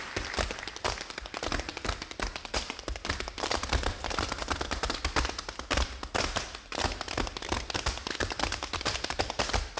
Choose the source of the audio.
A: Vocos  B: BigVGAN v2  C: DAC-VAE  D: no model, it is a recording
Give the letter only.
B